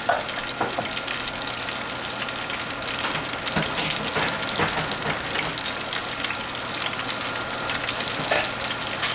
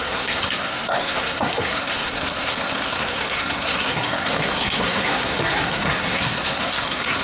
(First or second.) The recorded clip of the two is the first